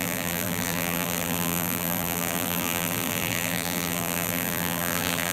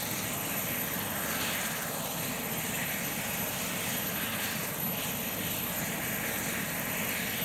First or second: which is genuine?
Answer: second